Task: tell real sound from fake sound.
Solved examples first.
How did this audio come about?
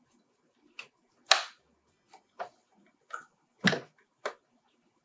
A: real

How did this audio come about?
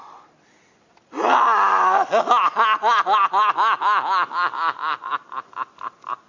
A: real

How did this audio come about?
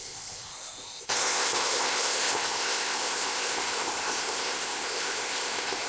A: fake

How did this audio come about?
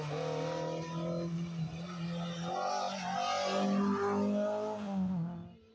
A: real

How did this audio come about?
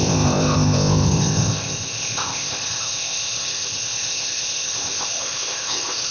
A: fake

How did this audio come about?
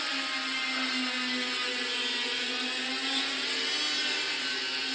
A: real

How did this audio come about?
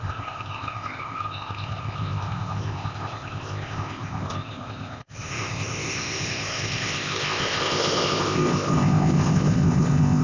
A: fake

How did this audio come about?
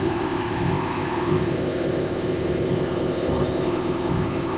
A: fake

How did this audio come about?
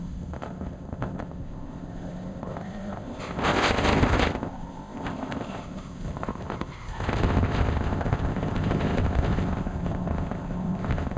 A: fake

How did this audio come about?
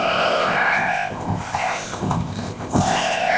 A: fake